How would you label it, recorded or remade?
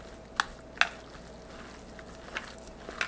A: recorded